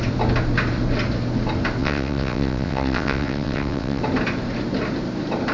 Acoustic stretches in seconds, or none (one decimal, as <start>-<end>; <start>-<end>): 0.0-1.8; 4.0-5.5